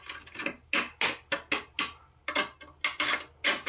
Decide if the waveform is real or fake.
real